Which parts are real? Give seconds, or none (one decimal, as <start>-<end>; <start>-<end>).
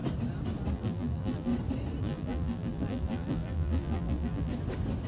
0.0-0.7; 1.5-2.0; 4.5-5.1